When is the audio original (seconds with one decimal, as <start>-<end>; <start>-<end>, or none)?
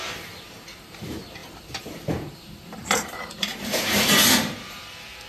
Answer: none